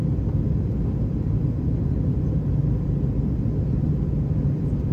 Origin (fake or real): real